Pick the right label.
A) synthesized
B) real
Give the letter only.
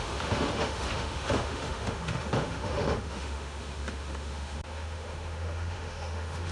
A